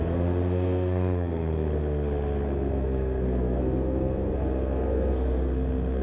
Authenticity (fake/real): fake